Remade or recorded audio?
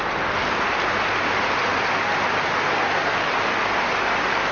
recorded